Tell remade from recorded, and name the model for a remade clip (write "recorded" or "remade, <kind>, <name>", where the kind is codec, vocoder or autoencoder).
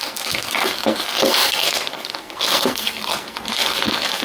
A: remade, codec, SNAC